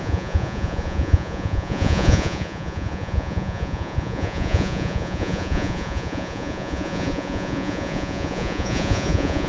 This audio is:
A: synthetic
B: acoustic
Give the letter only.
A